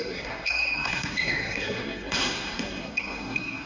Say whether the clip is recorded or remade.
remade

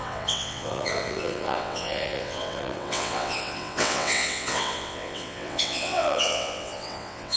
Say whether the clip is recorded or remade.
remade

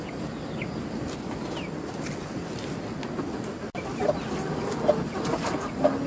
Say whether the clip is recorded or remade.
recorded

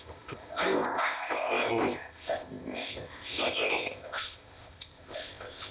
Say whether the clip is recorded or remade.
remade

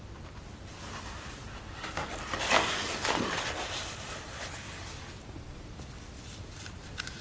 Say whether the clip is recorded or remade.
recorded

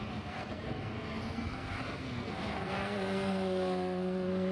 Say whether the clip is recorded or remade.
remade